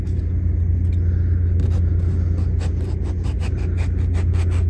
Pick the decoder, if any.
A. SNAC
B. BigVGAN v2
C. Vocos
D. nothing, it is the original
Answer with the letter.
D